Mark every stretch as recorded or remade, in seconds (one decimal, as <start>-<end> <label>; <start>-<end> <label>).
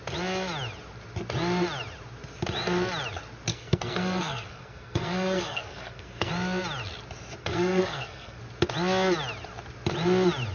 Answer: 0.0-3.5 recorded; 3.5-6.3 remade; 6.3-7.4 recorded; 7.4-8.4 remade; 8.4-10.5 recorded